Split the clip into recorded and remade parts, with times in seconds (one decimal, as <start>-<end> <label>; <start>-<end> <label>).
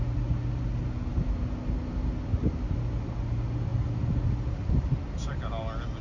0.0-6.0 recorded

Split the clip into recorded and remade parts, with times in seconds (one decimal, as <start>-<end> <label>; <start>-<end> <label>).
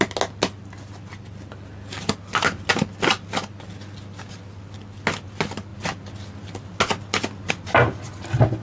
0.0-8.6 recorded